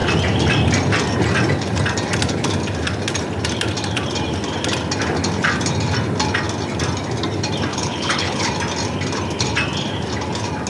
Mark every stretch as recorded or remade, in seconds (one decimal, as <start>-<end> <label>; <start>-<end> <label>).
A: 0.0-7.7 recorded; 7.7-8.5 remade; 8.5-10.7 recorded